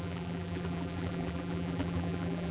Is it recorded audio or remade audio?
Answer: remade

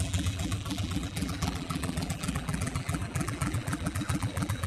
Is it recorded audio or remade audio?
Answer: remade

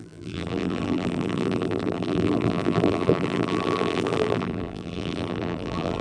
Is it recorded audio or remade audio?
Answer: remade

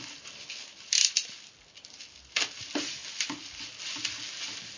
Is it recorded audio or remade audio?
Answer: recorded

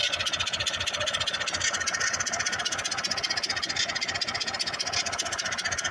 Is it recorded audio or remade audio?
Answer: recorded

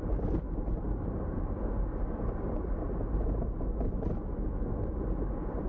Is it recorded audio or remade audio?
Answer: recorded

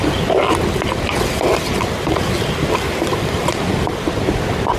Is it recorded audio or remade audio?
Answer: recorded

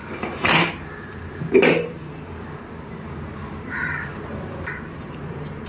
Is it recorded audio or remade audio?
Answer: remade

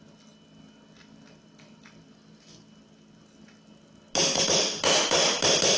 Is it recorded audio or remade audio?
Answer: recorded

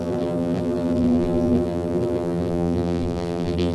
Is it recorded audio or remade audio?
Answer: remade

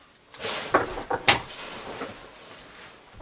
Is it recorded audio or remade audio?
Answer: recorded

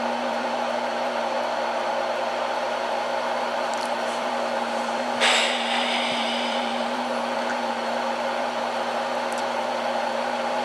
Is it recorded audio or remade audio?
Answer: remade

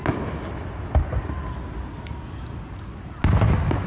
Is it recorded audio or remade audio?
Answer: recorded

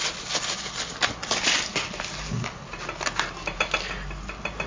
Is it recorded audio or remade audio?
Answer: recorded